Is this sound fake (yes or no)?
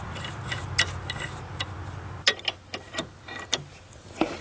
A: no